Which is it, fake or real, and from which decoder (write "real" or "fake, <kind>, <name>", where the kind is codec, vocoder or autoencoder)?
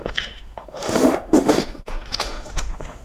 fake, autoencoder, DAC-VAE